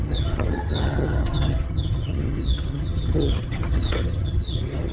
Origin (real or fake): fake